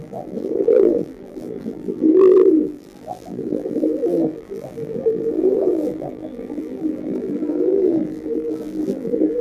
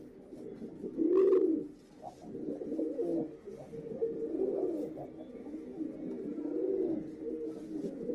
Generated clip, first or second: first